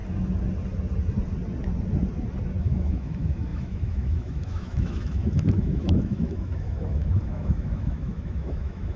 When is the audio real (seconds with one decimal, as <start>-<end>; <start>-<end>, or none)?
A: 0.0-2.6